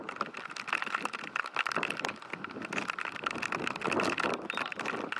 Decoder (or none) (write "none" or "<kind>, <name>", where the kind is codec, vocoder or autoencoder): none